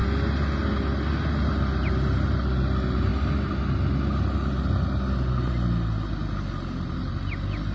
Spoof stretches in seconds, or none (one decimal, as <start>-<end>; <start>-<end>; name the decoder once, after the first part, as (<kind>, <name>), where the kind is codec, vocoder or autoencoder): none